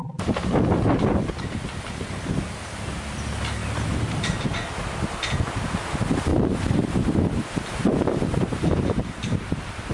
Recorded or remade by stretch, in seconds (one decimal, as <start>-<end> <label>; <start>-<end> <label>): 0.0-3.6 recorded; 3.6-4.8 remade; 4.8-6.3 recorded; 6.3-6.8 remade; 6.8-7.9 recorded; 7.9-9.9 remade